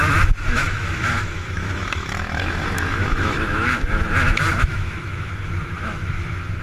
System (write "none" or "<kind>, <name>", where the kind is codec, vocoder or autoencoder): autoencoder, DAC-VAE